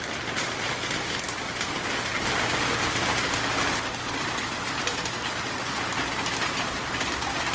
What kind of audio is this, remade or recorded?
recorded